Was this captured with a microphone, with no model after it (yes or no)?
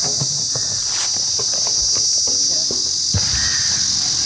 yes